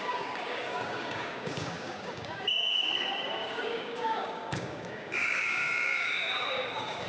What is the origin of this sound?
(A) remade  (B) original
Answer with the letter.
A